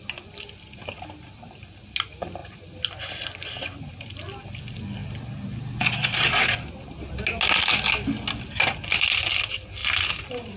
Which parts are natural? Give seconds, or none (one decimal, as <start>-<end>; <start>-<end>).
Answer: 0.0-2.4; 3.9-10.6